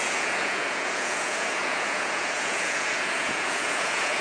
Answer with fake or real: fake